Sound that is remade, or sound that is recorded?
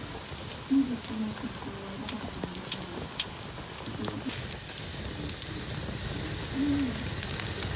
recorded